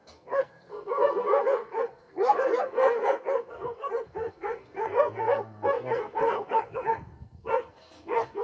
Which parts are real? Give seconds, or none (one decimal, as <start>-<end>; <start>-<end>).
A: none